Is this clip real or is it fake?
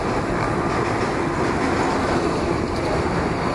real